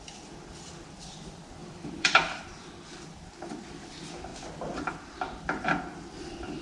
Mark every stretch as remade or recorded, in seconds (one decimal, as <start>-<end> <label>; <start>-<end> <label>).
0.0-1.6 recorded; 1.6-2.4 remade; 2.4-6.6 recorded